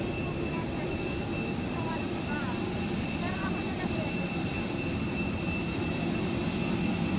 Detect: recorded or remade remade